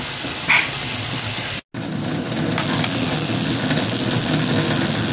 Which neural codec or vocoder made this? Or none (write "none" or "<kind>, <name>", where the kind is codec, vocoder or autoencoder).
none